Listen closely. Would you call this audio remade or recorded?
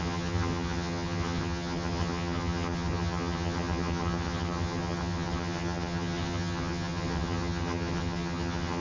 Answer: remade